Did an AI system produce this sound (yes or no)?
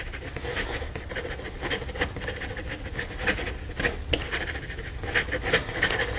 no